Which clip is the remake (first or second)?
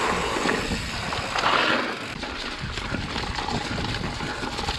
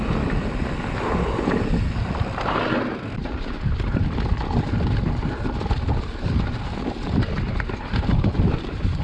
second